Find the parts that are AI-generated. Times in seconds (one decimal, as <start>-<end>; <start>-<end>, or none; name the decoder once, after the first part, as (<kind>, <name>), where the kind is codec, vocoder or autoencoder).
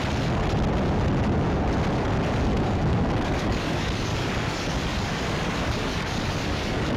2.5-7.0 (codec, DAC)